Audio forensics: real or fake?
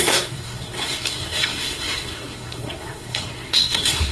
fake